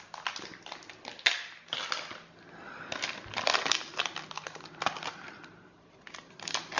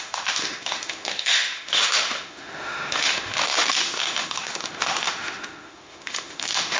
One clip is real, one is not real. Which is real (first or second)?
first